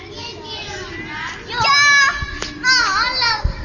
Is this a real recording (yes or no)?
yes